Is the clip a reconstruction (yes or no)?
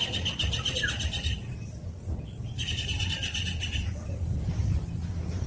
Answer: no